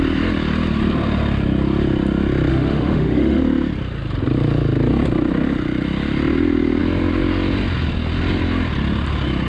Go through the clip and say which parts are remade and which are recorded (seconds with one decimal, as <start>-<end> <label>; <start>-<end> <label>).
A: 0.0-2.5 recorded; 2.5-3.4 remade; 3.4-9.5 recorded